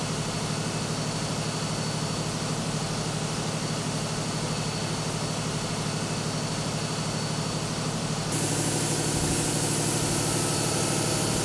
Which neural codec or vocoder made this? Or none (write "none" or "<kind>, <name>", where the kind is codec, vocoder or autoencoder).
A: none